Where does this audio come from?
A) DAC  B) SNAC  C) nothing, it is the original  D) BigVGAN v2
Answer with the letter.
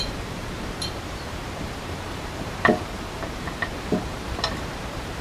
D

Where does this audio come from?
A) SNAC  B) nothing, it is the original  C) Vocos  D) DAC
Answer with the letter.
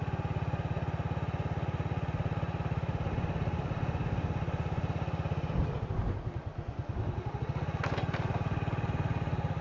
B